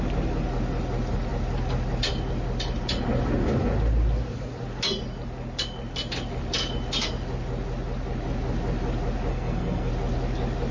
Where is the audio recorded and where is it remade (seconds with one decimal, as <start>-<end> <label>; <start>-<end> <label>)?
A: 0.0-9.3 recorded; 9.3-9.9 remade; 9.9-10.7 recorded